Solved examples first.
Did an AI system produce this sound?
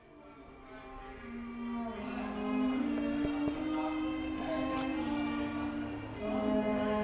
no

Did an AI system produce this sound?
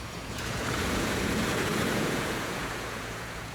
yes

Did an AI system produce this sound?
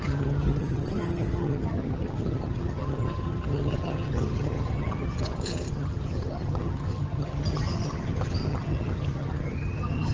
yes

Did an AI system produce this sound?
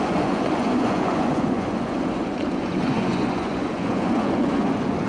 yes